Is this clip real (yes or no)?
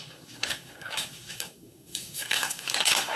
no